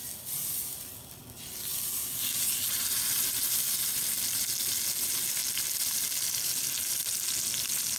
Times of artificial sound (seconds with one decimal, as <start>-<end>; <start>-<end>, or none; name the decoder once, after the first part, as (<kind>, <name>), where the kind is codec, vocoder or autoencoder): none